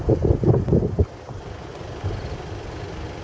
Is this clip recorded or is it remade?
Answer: recorded